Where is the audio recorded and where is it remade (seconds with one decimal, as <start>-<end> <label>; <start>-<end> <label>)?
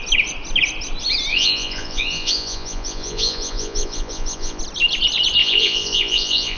0.0-1.3 recorded; 1.3-4.6 remade; 4.6-5.4 recorded; 5.4-6.6 remade